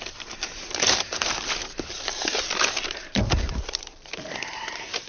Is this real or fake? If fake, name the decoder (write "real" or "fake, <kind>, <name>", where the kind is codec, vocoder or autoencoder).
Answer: fake, vocoder, BigVGAN v2